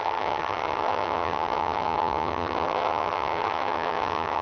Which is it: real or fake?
fake